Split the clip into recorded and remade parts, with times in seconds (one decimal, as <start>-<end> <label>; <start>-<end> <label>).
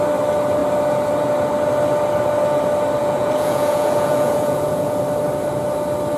0.0-3.0 recorded; 3.0-5.0 remade; 5.0-6.2 recorded